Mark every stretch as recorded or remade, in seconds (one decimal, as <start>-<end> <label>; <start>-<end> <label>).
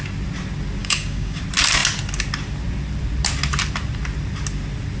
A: 0.0-0.8 recorded; 0.8-1.4 remade; 1.4-5.0 recorded